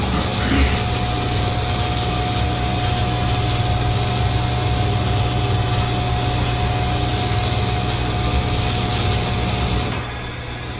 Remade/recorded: recorded